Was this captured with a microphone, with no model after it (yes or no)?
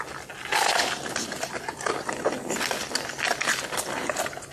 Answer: yes